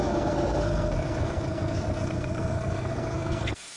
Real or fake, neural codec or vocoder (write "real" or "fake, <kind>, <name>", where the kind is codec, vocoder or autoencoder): fake, codec, SNAC